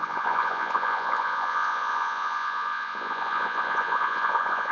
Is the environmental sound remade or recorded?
remade